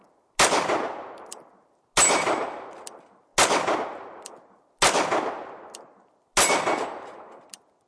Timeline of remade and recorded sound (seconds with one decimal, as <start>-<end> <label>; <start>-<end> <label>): 0.0-7.9 recorded